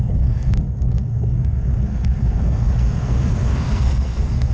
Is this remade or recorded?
remade